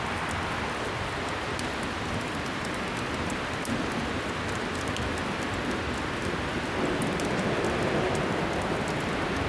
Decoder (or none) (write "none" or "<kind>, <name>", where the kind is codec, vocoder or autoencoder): none